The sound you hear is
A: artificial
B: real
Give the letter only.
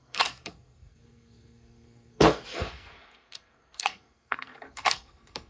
A